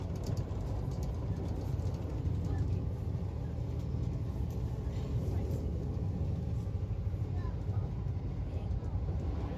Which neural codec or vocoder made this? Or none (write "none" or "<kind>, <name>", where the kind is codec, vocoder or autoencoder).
none